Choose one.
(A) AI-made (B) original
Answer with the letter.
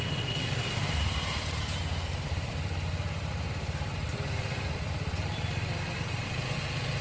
A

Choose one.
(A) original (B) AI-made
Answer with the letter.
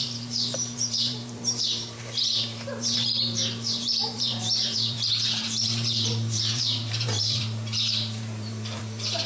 B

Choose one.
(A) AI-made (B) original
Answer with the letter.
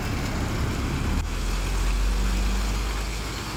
B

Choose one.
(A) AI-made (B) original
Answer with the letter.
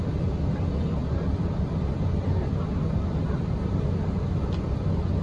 B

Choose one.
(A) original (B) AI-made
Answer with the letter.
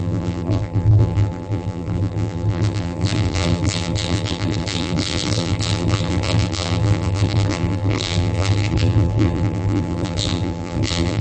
B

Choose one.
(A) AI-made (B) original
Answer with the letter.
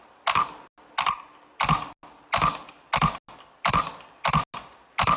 B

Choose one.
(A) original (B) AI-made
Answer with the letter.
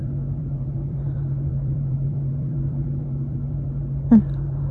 B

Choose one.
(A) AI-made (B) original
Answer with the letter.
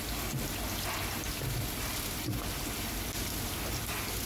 B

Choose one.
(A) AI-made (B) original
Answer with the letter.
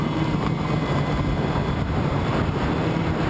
A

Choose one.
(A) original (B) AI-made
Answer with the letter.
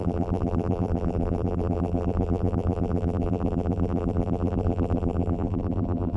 B